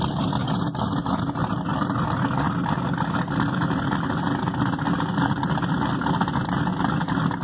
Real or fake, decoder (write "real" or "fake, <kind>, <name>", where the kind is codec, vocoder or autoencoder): real